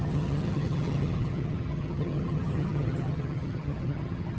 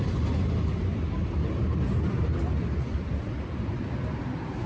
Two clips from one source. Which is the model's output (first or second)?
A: first